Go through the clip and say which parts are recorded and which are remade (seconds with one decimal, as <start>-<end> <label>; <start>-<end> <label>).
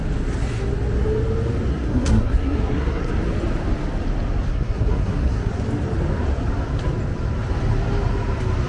0.0-1.7 recorded; 1.7-3.1 remade; 3.1-4.5 recorded; 4.5-5.5 remade; 5.5-8.7 recorded